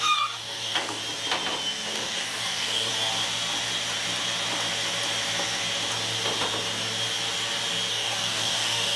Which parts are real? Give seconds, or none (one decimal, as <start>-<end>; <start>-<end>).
1.0-1.9; 2.9-7.9